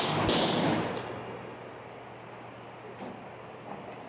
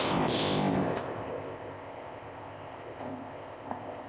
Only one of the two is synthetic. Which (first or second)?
second